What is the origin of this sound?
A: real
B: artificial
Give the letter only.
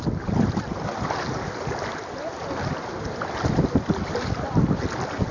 A